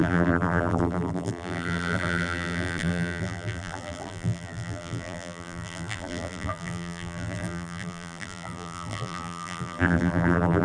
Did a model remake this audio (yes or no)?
yes